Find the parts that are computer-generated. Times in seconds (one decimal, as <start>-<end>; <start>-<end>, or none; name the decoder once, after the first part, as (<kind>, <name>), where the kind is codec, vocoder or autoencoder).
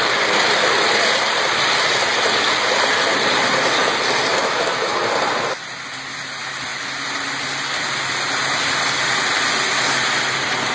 4.3-5.0 (autoencoder, DAC-VAE)